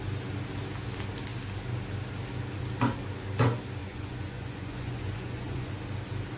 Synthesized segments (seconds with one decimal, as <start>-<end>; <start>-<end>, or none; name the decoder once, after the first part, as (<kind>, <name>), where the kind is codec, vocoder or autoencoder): 3.8-5.7 (vocoder, Vocos)